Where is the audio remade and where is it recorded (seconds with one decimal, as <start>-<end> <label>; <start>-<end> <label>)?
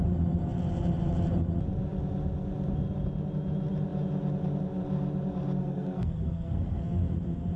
0.0-5.6 recorded; 5.6-7.1 remade; 7.1-7.6 recorded